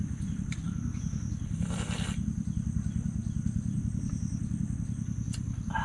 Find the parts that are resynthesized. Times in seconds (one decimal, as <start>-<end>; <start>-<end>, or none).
0.0-0.6